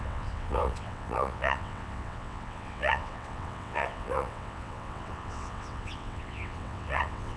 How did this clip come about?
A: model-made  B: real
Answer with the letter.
A